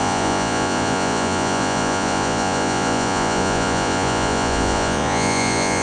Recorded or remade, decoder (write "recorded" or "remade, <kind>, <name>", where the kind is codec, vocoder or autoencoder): remade, vocoder, Vocos